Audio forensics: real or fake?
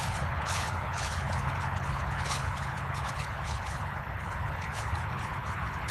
fake